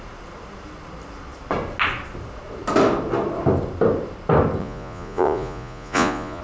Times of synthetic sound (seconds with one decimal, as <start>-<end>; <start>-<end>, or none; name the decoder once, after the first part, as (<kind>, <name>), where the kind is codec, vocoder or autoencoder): 4.6-6.4 (vocoder, Vocos)